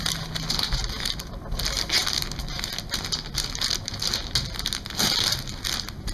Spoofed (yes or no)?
no